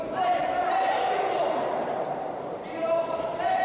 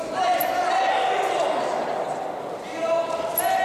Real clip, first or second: second